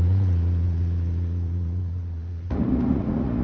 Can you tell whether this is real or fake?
fake